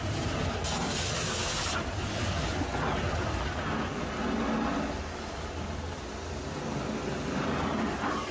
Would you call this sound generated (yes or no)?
no